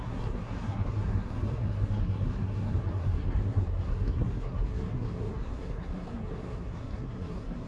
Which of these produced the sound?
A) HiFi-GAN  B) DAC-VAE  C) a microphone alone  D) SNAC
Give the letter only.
D